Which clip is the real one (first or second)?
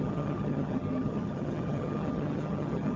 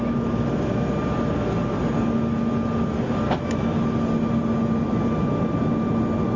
second